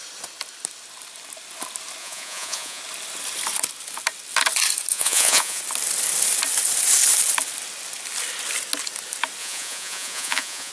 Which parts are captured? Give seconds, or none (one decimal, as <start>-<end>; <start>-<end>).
0.0-2.0; 2.8-4.9; 5.6-9.4